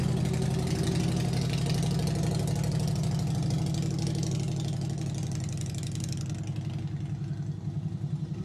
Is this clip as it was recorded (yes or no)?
yes